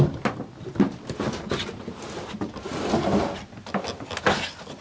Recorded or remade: recorded